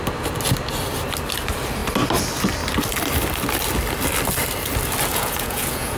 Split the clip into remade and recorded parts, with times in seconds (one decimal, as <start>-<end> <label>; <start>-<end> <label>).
0.0-5.1 recorded; 5.1-6.0 remade